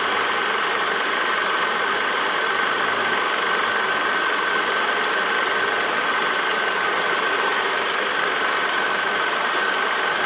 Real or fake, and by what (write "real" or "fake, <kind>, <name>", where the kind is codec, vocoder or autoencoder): fake, vocoder, BigVGAN v2